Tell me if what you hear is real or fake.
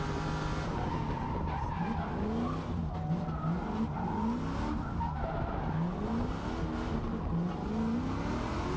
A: real